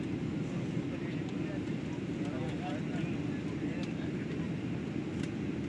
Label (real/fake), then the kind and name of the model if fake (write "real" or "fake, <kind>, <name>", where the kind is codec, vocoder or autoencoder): real